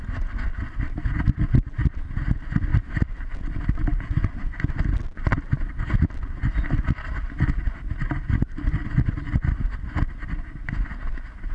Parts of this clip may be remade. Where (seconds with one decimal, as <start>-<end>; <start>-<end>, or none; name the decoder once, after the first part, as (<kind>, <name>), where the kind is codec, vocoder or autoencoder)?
2.7-3.5 (vocoder, BigVGAN v2); 6.5-7.7